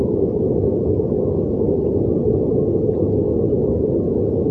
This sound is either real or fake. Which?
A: real